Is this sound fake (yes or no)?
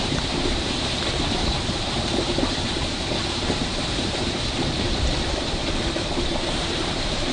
yes